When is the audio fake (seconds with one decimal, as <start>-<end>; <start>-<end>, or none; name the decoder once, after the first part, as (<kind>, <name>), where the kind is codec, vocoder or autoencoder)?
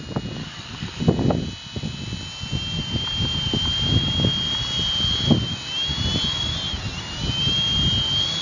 0.4-1.0 (codec, DAC)